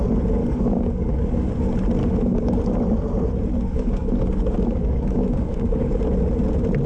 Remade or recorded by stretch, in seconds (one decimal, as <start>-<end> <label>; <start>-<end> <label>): 0.0-0.4 recorded; 0.4-1.5 remade; 1.5-2.0 recorded; 2.0-2.6 remade; 2.6-3.7 recorded; 3.7-6.0 remade; 6.0-6.9 recorded

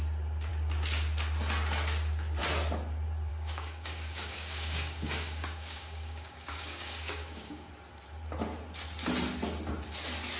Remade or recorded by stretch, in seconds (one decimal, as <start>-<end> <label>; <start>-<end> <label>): 0.0-3.3 recorded; 3.3-7.7 remade; 7.7-10.4 recorded

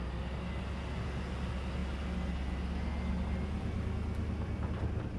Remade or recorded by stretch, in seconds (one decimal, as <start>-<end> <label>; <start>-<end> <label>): 0.0-5.2 recorded

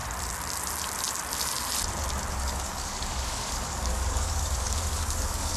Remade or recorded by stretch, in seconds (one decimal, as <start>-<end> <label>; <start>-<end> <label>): 0.0-2.3 recorded; 2.3-5.6 remade